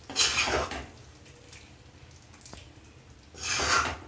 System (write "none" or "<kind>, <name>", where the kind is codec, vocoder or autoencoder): none